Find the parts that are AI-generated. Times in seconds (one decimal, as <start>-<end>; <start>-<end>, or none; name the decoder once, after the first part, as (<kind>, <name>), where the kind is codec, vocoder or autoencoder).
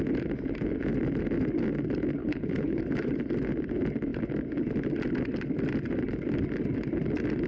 2.2-2.8 (codec, HILCodec)